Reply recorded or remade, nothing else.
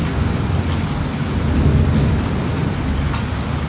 recorded